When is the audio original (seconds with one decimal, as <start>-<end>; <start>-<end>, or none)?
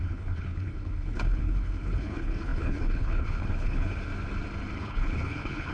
4.0-4.8